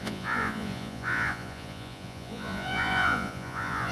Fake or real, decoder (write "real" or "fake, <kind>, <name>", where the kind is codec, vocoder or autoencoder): fake, vocoder, Vocos